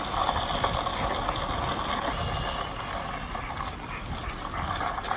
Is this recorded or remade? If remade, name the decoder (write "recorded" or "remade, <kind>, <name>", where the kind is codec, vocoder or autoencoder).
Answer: recorded